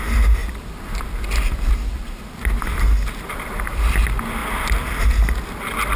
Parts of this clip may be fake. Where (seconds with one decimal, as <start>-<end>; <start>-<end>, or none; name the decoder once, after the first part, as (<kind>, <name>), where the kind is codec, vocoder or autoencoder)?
0.4-4.0 (vocoder, BigVGAN v2); 4.4-5.0